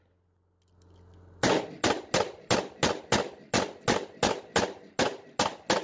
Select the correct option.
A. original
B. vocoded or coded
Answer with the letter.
A